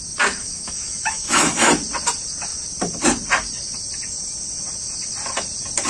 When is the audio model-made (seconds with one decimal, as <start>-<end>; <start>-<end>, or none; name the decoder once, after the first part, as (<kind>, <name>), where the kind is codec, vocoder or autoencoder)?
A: 0.4-1.7 (autoencoder, DAC-VAE)